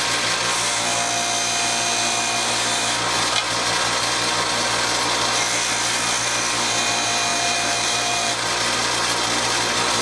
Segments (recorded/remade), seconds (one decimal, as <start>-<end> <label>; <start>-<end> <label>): 0.0-7.3 recorded; 7.3-8.3 remade; 8.3-10.0 recorded